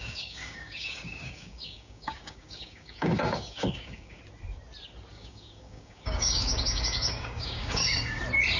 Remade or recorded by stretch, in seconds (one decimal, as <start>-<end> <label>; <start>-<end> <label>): 0.0-4.2 remade; 4.2-5.1 recorded; 5.1-8.2 remade; 8.2-8.6 recorded